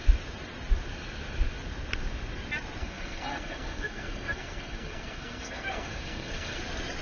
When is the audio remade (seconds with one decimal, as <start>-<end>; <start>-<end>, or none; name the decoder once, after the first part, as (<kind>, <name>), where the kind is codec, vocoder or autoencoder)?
2.8-6.6 (codec, SNAC)